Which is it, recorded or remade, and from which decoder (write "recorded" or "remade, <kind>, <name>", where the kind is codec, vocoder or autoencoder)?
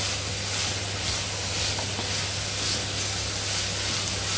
recorded